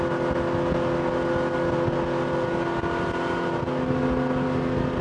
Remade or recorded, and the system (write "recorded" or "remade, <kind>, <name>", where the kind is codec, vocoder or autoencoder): recorded